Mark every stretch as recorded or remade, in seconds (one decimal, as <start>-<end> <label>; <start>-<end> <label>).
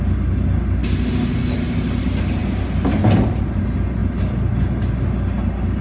0.0-5.8 recorded